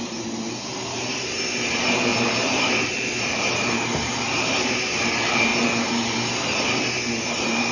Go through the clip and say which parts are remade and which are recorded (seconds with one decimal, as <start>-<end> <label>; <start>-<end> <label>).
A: 0.0-5.5 remade; 5.5-7.2 recorded; 7.2-7.7 remade